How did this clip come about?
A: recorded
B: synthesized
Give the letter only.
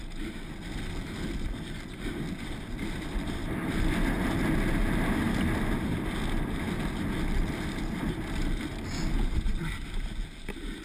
A